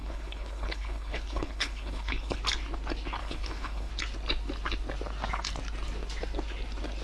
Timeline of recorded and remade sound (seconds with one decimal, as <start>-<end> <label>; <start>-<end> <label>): 0.0-2.4 remade; 2.4-3.2 recorded; 3.2-3.9 remade; 3.9-7.0 recorded